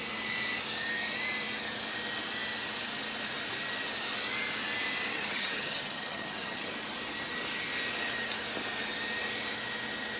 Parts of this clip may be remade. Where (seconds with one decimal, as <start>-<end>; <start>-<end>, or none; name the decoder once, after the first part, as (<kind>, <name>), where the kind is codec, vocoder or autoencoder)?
5.1-6.7 (vocoder, HiFi-GAN)